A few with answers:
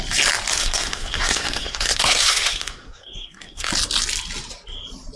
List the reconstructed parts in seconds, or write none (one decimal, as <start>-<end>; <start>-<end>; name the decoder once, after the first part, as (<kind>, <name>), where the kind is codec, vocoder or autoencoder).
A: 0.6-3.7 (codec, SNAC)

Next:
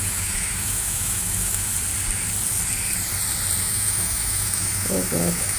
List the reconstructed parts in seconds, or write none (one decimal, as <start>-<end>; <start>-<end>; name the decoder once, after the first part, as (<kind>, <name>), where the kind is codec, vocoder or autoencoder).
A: 0.0-1.7 (autoencoder, DAC-VAE); 3.6-5.6

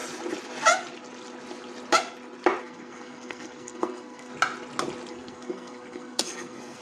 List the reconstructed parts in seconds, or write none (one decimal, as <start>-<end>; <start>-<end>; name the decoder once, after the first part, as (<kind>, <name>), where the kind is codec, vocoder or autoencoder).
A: 2.6-4.3 (codec, SNAC); 5.1-6.8